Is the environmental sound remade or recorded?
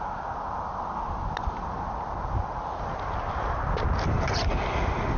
recorded